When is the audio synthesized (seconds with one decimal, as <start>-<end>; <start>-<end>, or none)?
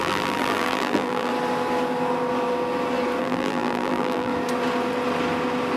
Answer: 0.0-1.3; 3.2-4.3